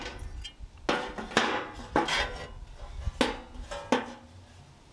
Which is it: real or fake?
real